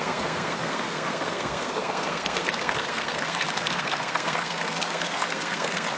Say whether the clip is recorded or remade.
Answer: remade